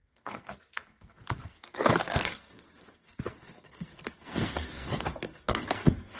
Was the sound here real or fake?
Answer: fake